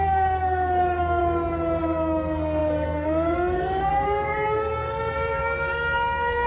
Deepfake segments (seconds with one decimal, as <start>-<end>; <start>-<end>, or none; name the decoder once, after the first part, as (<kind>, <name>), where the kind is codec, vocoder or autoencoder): 0.0-1.2 (codec, SNAC); 1.8-6.5